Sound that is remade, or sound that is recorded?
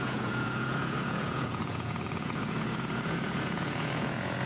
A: remade